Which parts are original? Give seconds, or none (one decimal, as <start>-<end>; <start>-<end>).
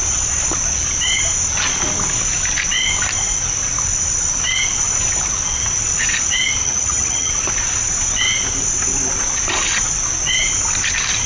0.0-6.6; 7.3-11.3